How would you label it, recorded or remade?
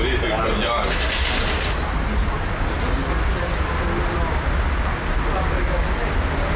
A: recorded